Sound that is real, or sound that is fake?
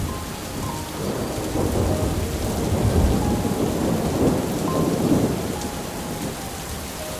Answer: real